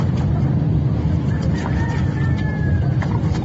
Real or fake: real